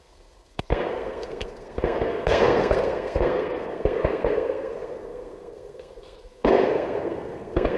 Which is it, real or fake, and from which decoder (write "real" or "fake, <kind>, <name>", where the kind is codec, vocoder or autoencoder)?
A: fake, codec, SNAC